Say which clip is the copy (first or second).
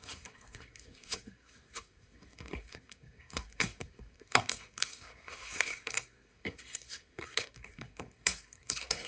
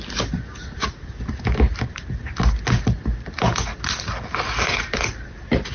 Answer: first